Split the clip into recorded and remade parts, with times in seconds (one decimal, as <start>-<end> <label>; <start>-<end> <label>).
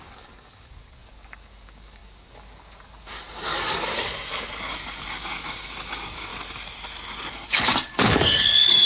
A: 0.0-6.3 remade; 6.3-7.3 recorded; 7.3-8.9 remade